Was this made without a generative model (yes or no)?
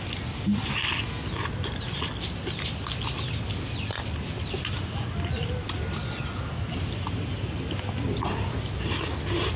yes